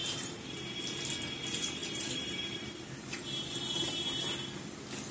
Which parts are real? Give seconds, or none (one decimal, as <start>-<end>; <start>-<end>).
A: 0.8-1.8; 4.3-5.1